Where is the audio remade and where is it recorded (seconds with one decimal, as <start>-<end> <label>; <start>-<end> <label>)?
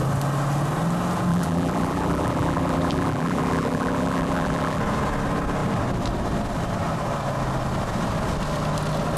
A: 0.0-1.3 recorded; 1.3-4.8 remade; 4.8-9.2 recorded